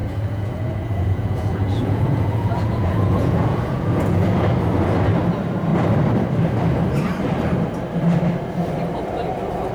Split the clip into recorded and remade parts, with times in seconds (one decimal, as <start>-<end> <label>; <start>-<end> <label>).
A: 0.0-4.2 remade; 4.2-9.7 recorded